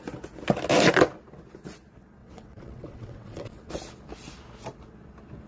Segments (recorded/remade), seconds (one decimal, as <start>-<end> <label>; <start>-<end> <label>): 0.0-2.2 recorded; 2.2-3.7 remade; 3.7-5.5 recorded